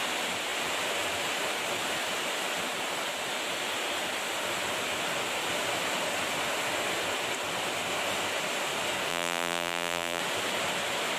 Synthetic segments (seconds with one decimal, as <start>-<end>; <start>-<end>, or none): 9.1-10.2